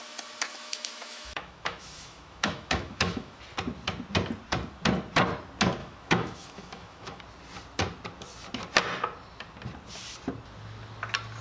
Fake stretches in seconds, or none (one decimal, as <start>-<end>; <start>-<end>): 0.5-3.4; 5.8-7.2